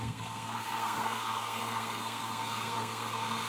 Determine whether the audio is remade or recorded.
remade